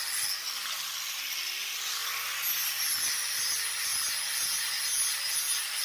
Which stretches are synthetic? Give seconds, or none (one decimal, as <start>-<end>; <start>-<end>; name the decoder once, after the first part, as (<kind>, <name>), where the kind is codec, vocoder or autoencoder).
none

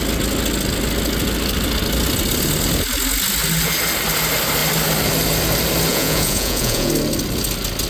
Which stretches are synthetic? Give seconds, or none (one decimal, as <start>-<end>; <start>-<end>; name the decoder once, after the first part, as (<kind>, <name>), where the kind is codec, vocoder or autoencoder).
5.9-6.9 (vocoder, Vocos)

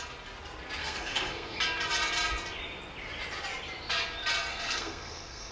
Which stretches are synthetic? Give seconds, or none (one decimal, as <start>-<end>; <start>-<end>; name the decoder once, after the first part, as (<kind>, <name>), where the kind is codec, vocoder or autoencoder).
0.8-1.6 (codec, SNAC); 4.5-5.5

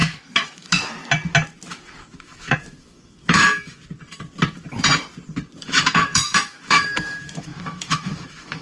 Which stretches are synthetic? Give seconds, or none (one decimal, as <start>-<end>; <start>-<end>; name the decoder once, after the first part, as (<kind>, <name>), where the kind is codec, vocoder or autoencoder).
0.0-1.0 (autoencoder, DAC-VAE); 1.7-3.8; 5.6-8.6

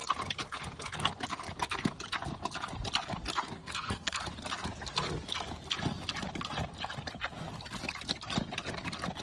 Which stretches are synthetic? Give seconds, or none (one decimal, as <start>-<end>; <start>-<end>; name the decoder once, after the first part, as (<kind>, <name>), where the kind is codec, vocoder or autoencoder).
3.6-4.2 (codec, SNAC)

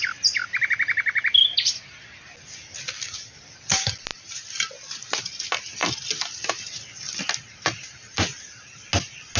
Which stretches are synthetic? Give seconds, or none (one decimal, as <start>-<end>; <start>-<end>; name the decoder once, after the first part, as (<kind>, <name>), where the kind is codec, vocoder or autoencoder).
none

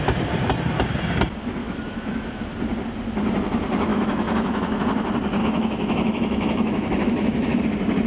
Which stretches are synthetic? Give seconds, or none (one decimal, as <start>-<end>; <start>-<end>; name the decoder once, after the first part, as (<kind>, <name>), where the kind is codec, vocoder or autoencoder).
1.6-2.4 (autoencoder, DAC-VAE); 3.9-4.8; 5.4-7.6